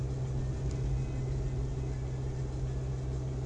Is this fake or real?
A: real